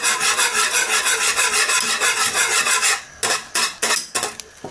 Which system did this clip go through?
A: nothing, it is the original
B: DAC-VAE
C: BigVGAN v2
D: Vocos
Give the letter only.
A